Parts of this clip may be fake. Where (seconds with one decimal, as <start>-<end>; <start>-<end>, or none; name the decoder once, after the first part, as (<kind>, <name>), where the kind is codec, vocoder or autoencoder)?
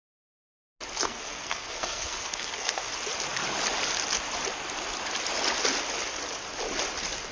1.0-2.9 (codec, SNAC)